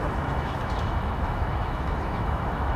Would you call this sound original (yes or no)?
no